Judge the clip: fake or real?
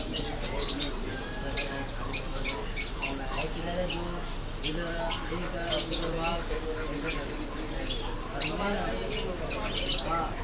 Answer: real